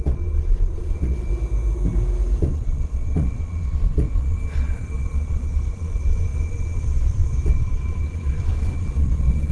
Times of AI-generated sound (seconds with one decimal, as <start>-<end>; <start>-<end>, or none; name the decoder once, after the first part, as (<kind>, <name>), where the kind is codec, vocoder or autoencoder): 0.0-1.3 (vocoder, Vocos); 2.4-9.5